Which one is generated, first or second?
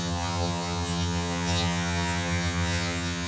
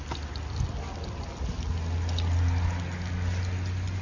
first